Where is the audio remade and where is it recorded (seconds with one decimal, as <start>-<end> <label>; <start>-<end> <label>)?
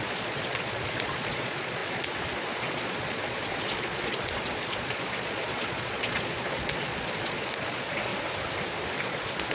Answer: 0.0-8.1 remade; 8.1-9.0 recorded; 9.0-9.5 remade